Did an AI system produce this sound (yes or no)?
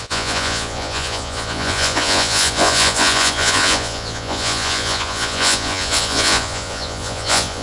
yes